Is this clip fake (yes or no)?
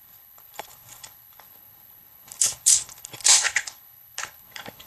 yes